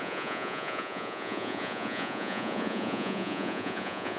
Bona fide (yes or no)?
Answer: no